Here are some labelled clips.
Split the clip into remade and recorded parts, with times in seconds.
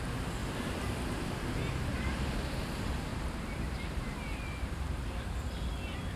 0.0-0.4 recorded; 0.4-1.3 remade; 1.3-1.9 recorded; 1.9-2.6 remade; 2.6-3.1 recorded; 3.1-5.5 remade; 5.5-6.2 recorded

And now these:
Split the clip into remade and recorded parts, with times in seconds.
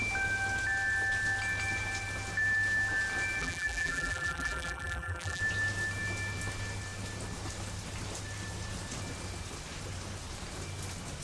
0.0-3.4 recorded; 3.4-5.4 remade; 5.4-11.2 recorded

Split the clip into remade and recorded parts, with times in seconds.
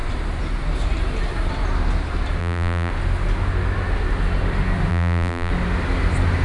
0.0-2.4 recorded; 2.4-2.9 remade; 2.9-4.9 recorded; 4.9-5.5 remade; 5.5-6.4 recorded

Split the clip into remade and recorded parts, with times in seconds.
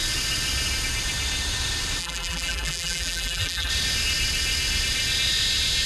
0.0-2.0 recorded; 2.0-3.7 remade; 3.7-5.9 recorded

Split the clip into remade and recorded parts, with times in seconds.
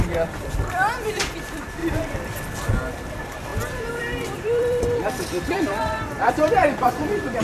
0.0-3.5 recorded; 3.5-7.4 remade